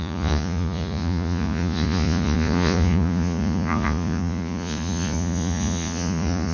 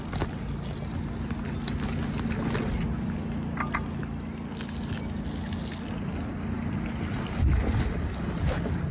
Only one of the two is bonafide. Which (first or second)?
second